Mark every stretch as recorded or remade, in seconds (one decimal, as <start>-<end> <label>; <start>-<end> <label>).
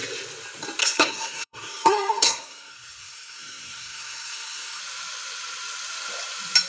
0.0-0.8 recorded; 0.8-4.8 remade; 4.8-6.7 recorded